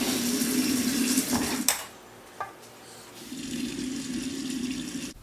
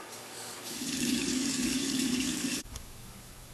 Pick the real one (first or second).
first